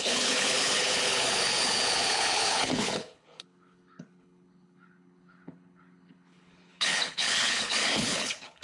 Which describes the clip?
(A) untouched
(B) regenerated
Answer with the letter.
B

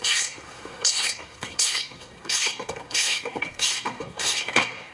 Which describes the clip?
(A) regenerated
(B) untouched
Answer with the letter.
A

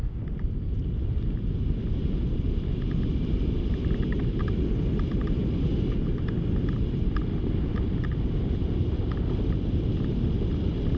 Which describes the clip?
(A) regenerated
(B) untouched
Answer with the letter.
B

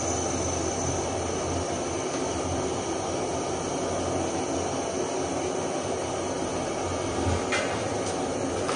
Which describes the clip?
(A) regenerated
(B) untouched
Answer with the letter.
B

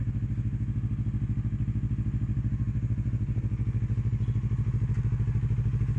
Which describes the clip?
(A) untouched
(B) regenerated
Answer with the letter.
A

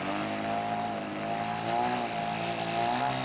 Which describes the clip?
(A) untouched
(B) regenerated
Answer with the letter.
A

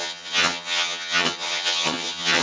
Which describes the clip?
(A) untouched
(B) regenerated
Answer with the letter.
B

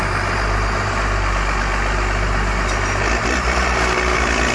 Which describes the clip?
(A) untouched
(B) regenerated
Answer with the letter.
A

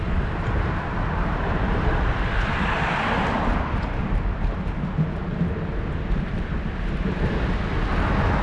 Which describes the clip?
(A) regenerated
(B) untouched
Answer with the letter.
B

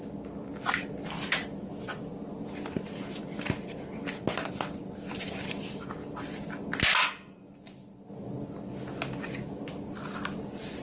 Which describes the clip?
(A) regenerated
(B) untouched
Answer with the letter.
B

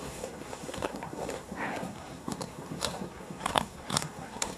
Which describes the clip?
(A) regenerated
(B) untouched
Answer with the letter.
A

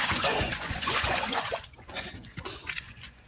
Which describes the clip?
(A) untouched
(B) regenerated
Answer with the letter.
B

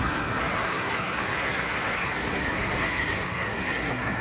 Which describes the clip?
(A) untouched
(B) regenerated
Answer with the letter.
B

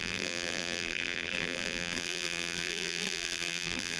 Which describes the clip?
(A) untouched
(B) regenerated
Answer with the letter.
B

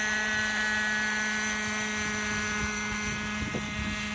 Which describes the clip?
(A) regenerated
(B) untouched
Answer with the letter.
B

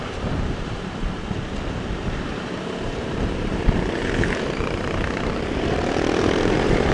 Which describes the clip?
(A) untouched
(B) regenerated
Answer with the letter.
B